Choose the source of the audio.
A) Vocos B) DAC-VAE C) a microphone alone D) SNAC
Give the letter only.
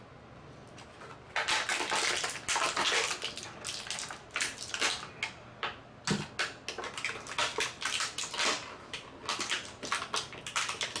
C